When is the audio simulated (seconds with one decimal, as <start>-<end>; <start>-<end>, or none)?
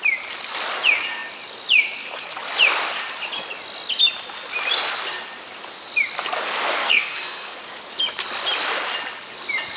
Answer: 6.8-7.6